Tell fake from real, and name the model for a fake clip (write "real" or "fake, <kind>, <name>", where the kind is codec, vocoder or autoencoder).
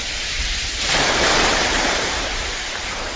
fake, vocoder, BigVGAN v2